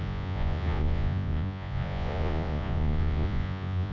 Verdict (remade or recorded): remade